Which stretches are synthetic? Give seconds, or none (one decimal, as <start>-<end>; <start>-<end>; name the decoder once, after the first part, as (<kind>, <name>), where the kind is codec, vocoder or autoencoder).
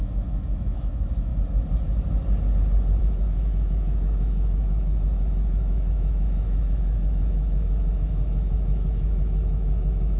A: 0.0-1.3 (autoencoder, DAC-VAE); 3.0-10.2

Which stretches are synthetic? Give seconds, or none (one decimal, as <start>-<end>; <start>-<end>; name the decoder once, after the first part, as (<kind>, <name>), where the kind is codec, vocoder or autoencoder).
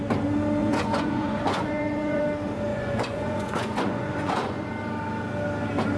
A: 0.6-2.2 (vocoder, Vocos); 2.7-4.7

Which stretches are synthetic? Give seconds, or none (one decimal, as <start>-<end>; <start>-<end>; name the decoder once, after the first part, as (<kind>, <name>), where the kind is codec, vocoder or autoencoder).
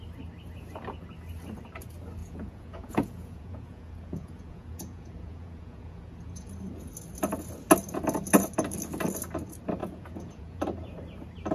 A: 2.2-6.5 (vocoder, Vocos); 9.8-10.6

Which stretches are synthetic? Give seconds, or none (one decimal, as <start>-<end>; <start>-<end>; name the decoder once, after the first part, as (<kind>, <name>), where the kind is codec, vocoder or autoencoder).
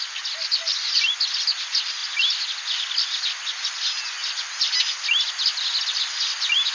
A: none